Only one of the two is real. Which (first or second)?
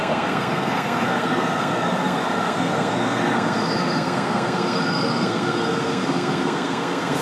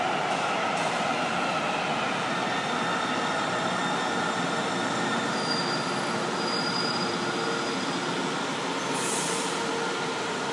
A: second